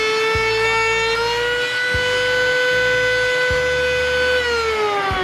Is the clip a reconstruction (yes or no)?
no